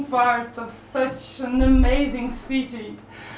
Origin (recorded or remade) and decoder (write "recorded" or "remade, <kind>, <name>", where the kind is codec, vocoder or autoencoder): recorded